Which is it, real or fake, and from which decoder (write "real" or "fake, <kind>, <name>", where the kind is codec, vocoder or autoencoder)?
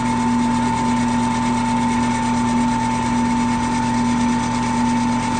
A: real